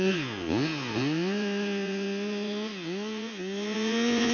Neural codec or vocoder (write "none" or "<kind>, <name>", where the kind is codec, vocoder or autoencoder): vocoder, Vocos